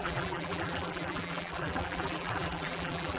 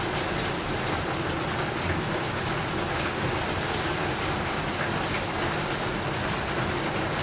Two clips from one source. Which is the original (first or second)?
second